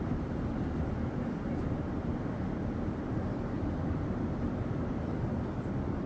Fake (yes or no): yes